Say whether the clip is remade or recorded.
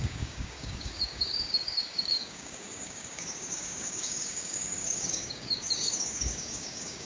remade